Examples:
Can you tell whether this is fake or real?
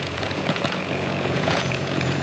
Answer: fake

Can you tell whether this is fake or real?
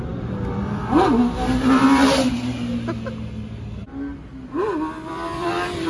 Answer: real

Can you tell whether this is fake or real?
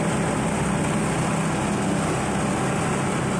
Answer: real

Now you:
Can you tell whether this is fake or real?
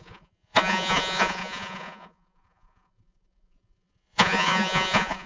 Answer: fake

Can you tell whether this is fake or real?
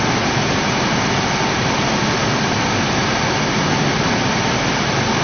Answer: real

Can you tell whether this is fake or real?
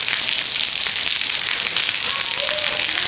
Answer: real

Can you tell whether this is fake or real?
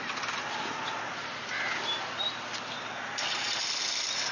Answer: real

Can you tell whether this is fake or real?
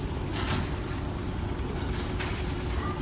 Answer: real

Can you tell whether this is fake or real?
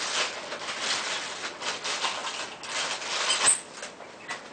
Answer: real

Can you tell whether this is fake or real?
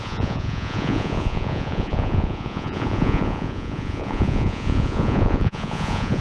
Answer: fake